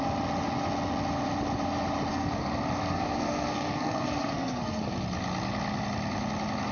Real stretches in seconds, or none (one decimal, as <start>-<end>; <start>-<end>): 0.0-2.1; 4.8-6.7